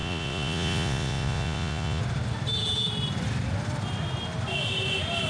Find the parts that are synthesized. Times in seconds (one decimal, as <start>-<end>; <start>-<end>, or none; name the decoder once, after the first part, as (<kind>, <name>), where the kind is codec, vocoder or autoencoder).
0.0-2.0 (vocoder, Vocos)